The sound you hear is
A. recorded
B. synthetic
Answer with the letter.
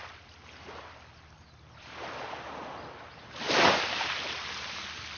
A